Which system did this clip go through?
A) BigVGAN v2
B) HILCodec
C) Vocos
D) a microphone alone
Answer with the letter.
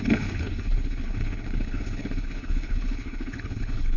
B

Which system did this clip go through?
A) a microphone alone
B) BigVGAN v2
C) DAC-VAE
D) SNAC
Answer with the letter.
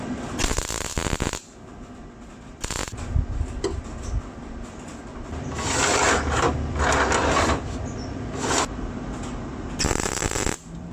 A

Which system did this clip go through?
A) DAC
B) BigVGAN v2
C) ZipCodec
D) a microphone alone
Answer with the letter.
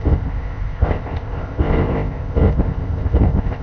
C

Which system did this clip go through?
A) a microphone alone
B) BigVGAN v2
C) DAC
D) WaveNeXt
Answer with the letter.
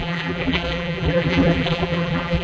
B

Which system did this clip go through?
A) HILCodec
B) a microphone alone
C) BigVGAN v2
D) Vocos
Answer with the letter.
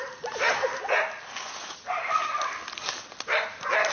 B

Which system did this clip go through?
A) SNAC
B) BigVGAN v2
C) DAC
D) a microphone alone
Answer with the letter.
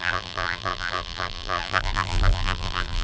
B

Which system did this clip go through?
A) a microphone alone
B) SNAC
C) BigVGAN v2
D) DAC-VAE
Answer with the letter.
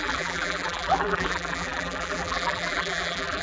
C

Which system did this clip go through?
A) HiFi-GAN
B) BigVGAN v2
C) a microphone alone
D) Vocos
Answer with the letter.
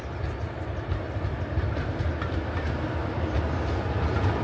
C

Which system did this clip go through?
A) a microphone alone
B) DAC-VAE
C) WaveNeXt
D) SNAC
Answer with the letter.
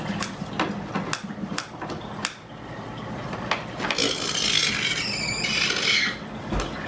A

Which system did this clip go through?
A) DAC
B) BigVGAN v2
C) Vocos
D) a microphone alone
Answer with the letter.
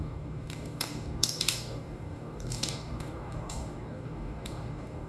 A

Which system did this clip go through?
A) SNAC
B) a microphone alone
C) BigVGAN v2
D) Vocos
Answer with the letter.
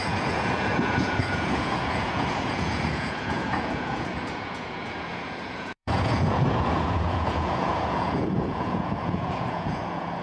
D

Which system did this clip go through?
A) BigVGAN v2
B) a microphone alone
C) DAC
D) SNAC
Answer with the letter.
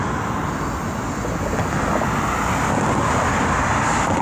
B